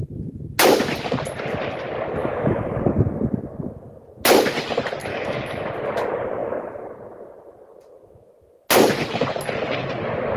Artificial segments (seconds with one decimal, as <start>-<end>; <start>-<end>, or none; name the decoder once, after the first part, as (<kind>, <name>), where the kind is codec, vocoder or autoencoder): 2.2-2.8 (autoencoder, DAC-VAE); 5.1-5.7